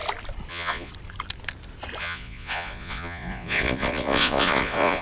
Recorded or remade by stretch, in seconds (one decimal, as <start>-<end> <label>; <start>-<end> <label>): 0.0-0.5 recorded; 0.5-0.9 remade; 0.9-2.0 recorded; 2.0-5.0 remade